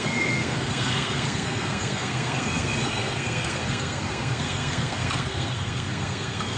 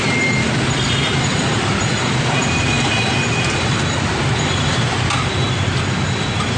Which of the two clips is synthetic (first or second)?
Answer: first